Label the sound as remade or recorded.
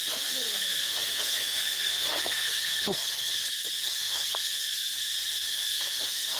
remade